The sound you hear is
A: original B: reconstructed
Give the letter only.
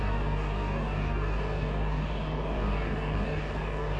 B